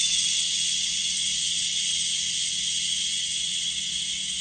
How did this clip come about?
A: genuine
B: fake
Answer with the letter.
B